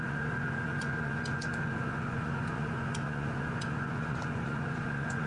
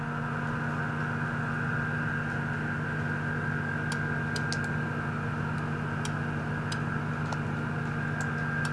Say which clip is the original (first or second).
second